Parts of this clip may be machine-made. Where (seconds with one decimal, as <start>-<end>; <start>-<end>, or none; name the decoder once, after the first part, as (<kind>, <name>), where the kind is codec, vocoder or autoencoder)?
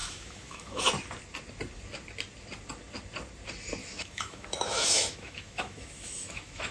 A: 0.0-0.8 (autoencoder, DAC-VAE); 3.8-6.7